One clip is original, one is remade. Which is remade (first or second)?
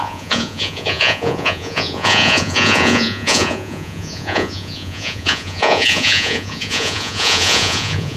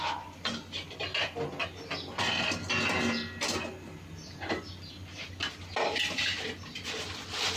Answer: first